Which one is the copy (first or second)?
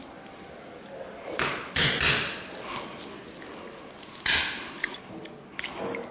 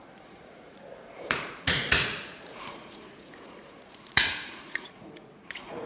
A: second